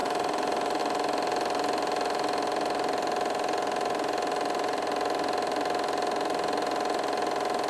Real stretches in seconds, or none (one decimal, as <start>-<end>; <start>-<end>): 0.8-7.7